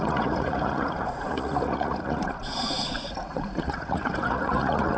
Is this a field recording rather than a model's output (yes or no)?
no